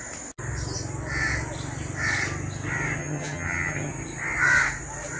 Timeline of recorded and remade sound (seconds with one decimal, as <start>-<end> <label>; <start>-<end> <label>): 0.0-3.0 recorded; 3.0-3.9 remade; 3.9-5.2 recorded